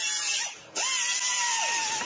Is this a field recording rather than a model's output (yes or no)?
yes